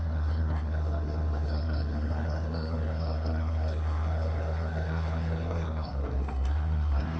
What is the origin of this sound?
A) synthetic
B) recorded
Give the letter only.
A